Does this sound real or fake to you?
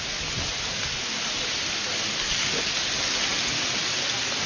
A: real